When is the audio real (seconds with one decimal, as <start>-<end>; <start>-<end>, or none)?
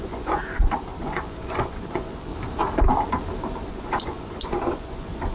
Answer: 0.4-1.0; 2.3-3.7